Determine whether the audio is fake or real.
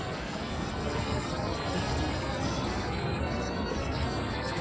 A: fake